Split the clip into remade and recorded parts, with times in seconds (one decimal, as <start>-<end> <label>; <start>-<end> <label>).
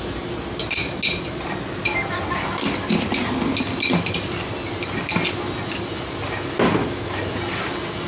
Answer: 0.0-8.1 recorded